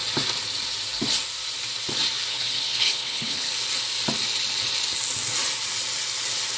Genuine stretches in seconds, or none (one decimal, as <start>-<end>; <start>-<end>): 0.0-2.3; 3.5-6.6